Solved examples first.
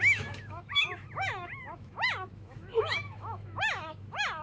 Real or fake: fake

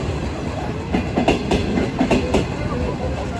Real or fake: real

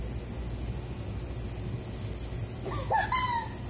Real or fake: real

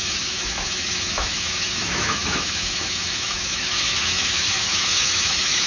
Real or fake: fake